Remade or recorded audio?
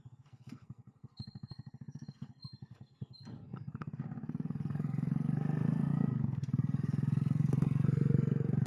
remade